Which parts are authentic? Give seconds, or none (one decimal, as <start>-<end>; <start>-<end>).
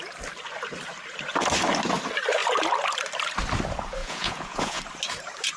0.0-4.0; 4.8-5.6